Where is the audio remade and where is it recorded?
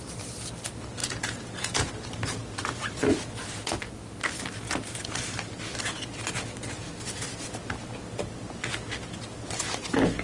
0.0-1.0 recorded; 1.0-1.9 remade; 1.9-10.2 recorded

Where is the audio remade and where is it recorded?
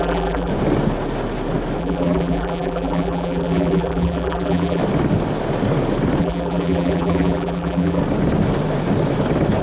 0.0-0.5 remade; 0.5-1.8 recorded; 1.8-4.8 remade; 4.8-6.2 recorded; 6.2-8.0 remade; 8.0-9.6 recorded